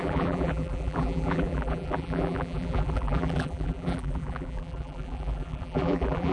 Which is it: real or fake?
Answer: fake